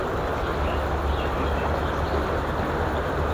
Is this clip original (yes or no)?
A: yes